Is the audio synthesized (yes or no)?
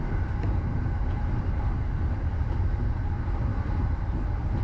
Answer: no